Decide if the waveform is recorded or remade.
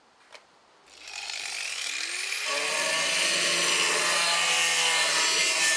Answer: recorded